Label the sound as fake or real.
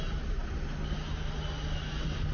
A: real